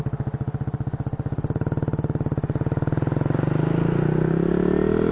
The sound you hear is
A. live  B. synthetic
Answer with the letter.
A